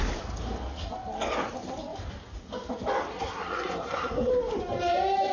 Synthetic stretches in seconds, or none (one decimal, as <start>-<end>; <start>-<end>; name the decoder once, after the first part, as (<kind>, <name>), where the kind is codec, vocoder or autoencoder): 3.1-4.3 (codec, SNAC)